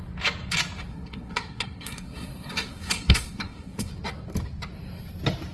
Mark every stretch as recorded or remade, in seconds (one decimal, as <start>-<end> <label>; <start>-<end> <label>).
0.0-0.9 recorded; 0.9-3.9 remade; 3.9-5.5 recorded